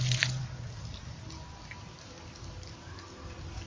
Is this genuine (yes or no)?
yes